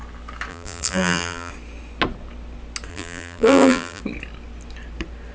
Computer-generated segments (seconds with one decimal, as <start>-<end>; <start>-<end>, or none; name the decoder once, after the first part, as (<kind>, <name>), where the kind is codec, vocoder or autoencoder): 0.5-1.5 (vocoder, BigVGAN v2); 2.9-4.0